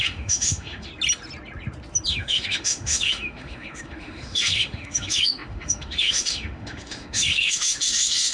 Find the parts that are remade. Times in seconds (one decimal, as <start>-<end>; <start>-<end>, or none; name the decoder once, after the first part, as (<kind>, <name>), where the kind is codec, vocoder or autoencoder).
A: 0.0-0.9 (autoencoder, DAC-VAE); 2.1-8.3